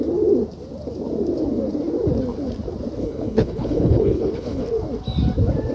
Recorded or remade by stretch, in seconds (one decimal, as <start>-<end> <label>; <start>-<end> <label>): 0.0-3.0 recorded; 3.0-4.6 remade; 4.6-5.7 recorded

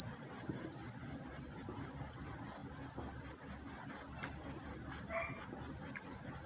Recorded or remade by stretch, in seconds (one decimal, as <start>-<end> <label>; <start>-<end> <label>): 0.0-6.5 recorded

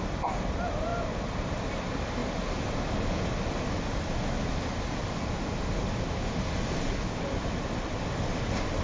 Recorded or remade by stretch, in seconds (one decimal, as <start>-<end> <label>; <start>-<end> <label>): 0.0-8.8 recorded

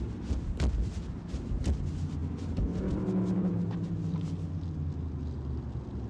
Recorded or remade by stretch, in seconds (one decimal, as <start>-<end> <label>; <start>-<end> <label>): 0.0-6.1 recorded

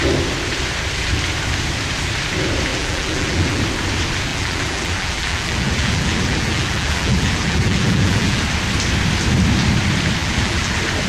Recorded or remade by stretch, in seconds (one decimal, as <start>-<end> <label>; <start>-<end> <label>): 0.0-2.7 recorded; 2.7-3.6 remade; 3.6-4.3 recorded; 4.3-8.4 remade; 8.4-10.2 recorded; 10.2-10.7 remade; 10.7-11.1 recorded